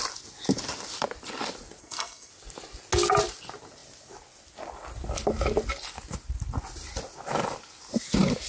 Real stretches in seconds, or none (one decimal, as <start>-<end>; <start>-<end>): 0.0-1.8; 2.3-8.5